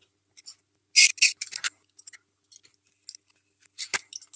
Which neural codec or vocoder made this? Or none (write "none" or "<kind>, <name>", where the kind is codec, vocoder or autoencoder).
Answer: none